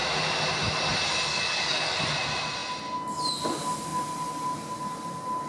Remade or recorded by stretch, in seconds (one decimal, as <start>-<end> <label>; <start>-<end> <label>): 0.0-1.3 recorded; 1.3-2.0 remade; 2.0-5.5 recorded